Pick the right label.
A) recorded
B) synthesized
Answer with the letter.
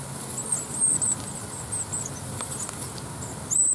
A